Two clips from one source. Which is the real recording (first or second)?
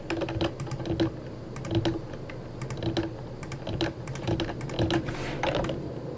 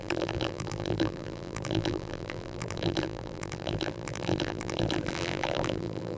first